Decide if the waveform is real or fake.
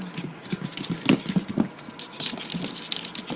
real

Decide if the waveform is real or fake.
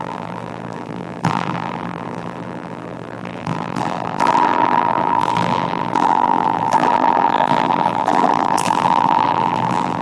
fake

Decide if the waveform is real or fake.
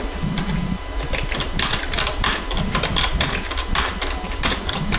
real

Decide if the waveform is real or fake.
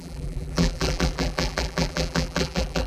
fake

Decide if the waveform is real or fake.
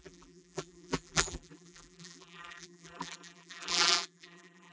fake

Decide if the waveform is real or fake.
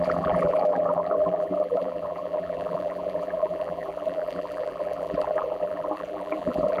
fake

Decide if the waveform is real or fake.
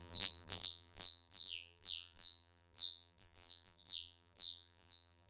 fake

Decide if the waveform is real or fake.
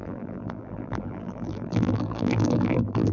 fake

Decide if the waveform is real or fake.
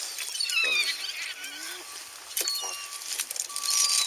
real